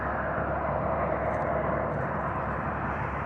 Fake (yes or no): yes